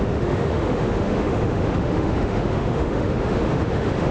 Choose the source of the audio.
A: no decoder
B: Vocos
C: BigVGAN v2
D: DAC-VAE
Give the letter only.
D